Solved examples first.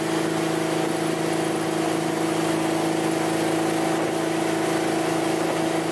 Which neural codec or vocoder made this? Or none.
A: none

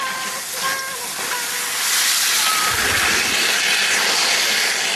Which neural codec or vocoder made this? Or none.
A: none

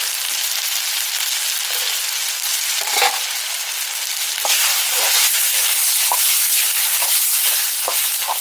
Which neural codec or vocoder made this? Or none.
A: none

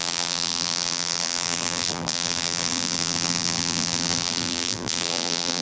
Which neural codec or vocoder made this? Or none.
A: vocoder, BigVGAN v2